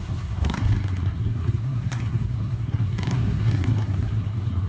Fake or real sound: fake